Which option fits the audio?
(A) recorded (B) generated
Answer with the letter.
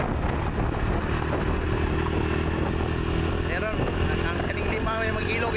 A